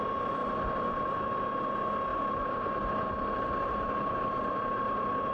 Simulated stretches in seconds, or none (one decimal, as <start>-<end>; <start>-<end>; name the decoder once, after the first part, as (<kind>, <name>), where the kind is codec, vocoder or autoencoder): 0.4-1.4 (vocoder, BigVGAN v2); 2.1-5.3